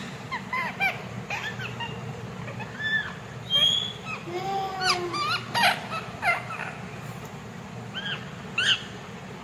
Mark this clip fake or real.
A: real